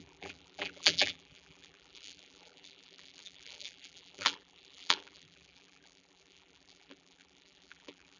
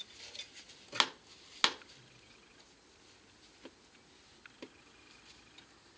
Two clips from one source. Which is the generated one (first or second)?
first